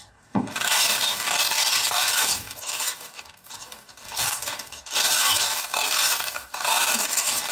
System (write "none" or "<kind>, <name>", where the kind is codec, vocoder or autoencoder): codec, DAC